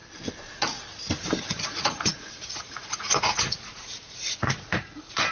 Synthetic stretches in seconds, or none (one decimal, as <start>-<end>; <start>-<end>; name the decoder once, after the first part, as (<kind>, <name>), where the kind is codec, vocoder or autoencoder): 0.5-0.9 (vocoder, Vocos); 1.5-5.3